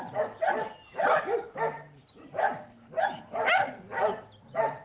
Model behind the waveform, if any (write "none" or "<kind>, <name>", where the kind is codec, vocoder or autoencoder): none